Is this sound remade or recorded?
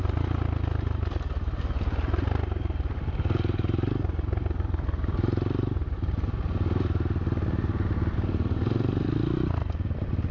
recorded